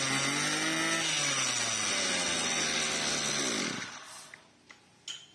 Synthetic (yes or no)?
no